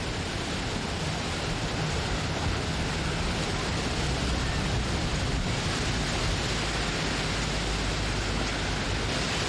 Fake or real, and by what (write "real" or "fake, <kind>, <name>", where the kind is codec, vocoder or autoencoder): real